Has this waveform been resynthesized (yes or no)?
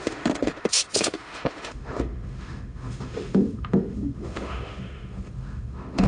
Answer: yes